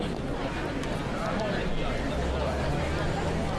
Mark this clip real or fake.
real